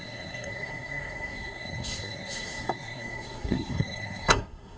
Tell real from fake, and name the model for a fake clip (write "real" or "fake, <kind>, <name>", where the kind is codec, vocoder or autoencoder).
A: fake, codec, SNAC